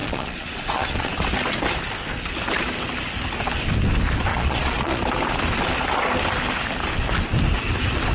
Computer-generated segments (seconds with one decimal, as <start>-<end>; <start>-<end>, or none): 0.0-1.1; 4.3-5.0